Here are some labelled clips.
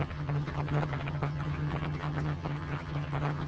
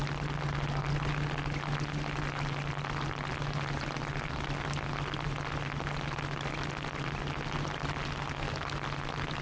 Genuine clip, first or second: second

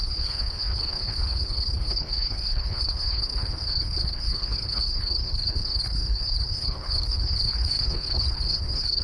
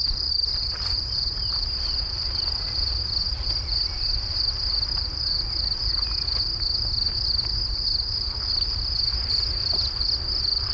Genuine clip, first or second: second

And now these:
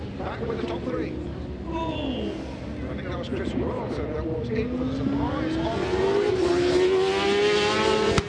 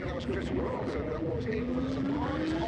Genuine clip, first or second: first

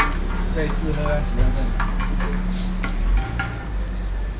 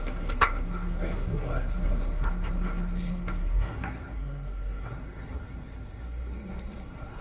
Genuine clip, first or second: first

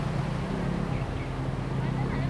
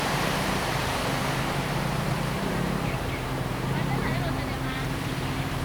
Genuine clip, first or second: first